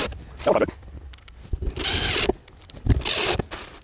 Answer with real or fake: real